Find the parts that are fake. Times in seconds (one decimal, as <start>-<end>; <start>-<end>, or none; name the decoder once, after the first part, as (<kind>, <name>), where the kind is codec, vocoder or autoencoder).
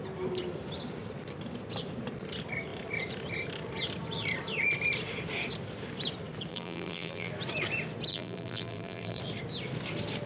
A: 6.5-7.3 (vocoder, BigVGAN v2); 8.1-9.2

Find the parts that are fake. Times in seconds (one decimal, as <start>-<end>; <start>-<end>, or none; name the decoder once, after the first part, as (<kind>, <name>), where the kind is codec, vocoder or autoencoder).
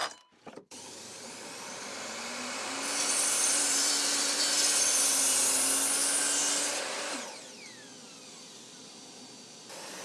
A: 0.0-4.4 (vocoder, BigVGAN v2)